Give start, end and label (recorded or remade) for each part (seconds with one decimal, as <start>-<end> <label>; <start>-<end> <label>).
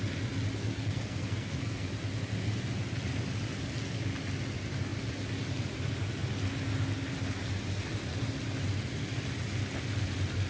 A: 0.0-0.6 recorded; 0.6-1.9 remade; 1.9-10.5 recorded